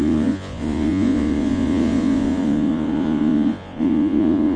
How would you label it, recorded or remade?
remade